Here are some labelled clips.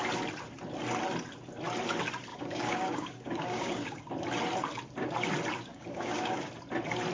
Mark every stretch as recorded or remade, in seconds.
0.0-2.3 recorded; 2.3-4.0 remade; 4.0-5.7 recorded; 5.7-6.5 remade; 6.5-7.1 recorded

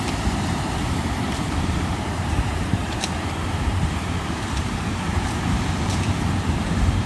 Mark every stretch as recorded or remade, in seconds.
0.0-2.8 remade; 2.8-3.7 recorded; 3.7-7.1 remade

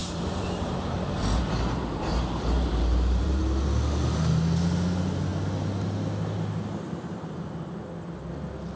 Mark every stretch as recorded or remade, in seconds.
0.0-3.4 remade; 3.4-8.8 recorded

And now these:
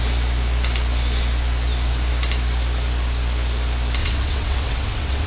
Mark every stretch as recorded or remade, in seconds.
0.0-4.0 recorded; 4.0-5.3 remade

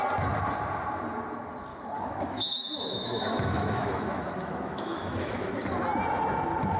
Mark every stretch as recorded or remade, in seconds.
0.0-1.7 recorded; 1.7-5.5 remade; 5.5-6.8 recorded

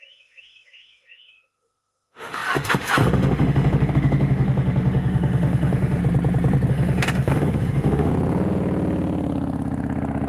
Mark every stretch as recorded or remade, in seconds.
0.0-6.0 remade; 6.0-6.7 recorded; 6.7-8.1 remade; 8.1-10.3 recorded

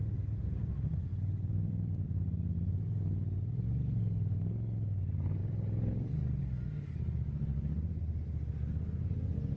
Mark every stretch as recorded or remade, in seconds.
0.0-1.1 recorded; 1.1-2.8 remade; 2.8-5.4 recorded; 5.4-6.4 remade; 6.4-9.6 recorded

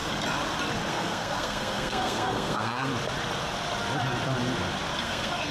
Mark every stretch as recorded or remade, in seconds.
0.0-0.9 recorded; 0.9-2.9 remade; 2.9-5.0 recorded; 5.0-5.5 remade